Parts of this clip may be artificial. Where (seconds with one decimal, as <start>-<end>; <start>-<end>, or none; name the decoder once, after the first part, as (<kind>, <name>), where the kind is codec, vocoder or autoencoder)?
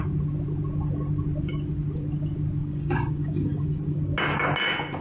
2.6-4.0 (codec, DAC)